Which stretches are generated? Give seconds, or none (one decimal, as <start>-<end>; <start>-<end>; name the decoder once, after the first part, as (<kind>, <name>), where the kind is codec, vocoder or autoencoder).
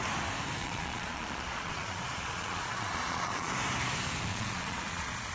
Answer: 0.6-3.5 (vocoder, Vocos); 4.3-5.3